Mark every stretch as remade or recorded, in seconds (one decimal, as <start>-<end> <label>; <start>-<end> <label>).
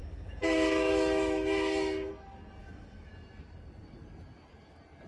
0.0-2.1 remade; 2.1-2.6 recorded; 2.6-3.1 remade; 3.1-5.1 recorded